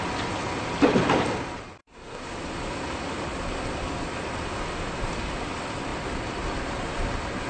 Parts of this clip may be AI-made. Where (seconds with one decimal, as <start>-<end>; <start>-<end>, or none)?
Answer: 1.8-2.3